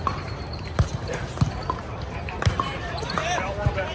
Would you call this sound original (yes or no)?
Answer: no